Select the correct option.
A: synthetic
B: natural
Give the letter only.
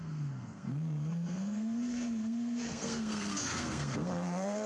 A